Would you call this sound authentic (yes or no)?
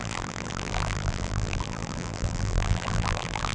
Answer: no